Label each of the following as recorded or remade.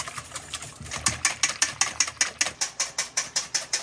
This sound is recorded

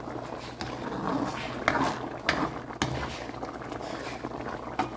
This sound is recorded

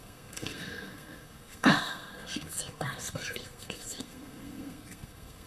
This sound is remade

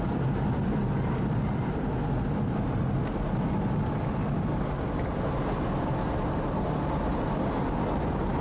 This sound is recorded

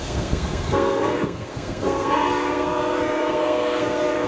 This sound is remade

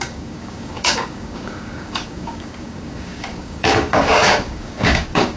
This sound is remade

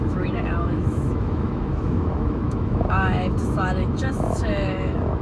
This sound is remade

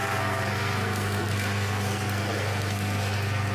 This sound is remade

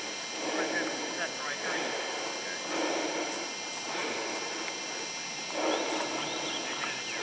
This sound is recorded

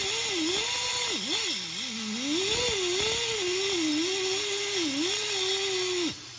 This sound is recorded